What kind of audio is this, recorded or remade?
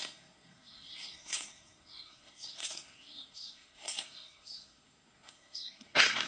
remade